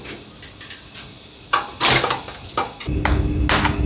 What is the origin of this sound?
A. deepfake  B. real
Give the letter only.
B